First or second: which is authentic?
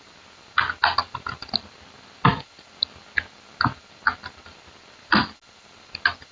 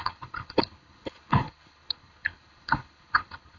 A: first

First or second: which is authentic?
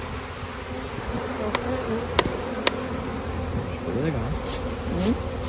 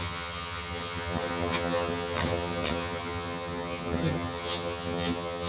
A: first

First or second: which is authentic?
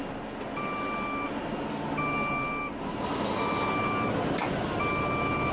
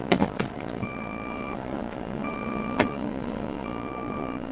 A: first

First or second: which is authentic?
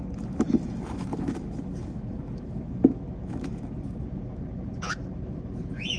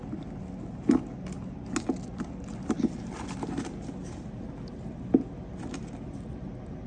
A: second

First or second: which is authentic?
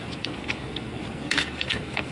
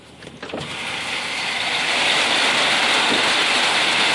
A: second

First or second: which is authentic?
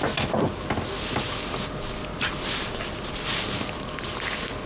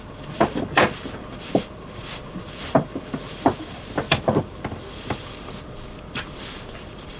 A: first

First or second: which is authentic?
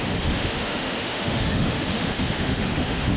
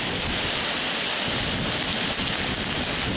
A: second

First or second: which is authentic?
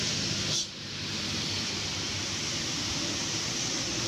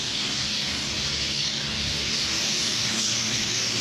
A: first